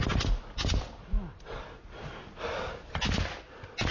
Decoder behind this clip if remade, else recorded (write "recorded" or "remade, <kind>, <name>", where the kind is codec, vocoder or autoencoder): recorded